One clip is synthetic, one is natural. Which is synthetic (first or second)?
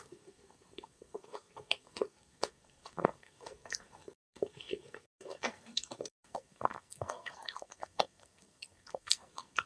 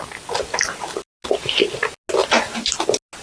first